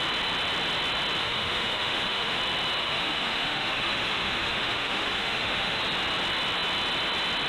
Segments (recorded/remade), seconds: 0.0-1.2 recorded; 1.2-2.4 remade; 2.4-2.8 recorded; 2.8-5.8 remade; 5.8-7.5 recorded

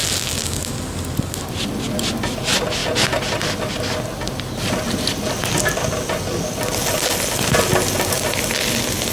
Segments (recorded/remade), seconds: 0.0-0.7 remade; 0.7-9.1 recorded

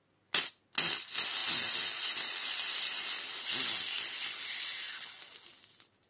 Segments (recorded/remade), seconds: 0.0-6.1 recorded

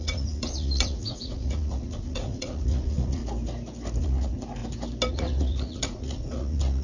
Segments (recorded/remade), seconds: 0.0-3.2 remade; 3.2-4.0 recorded; 4.0-4.6 remade; 4.6-5.1 recorded; 5.1-6.8 remade

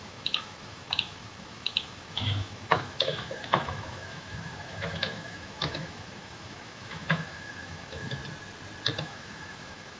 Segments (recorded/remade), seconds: 0.0-8.2 remade; 8.2-9.0 recorded; 9.0-10.0 remade

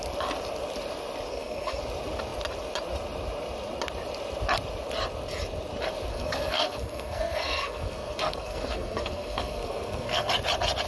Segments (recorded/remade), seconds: 0.0-1.3 recorded; 1.3-1.8 remade; 1.8-6.1 recorded; 6.1-10.3 remade; 10.3-10.9 recorded

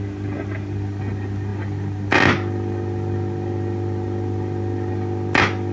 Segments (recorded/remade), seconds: 0.0-5.7 recorded

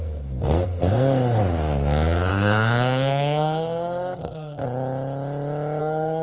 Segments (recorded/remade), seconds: 0.0-1.4 remade; 1.4-2.3 recorded; 2.3-4.6 remade; 4.6-5.8 recorded; 5.8-6.2 remade